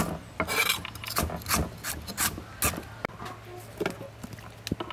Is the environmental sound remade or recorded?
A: recorded